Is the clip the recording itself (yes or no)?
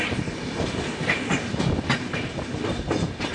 yes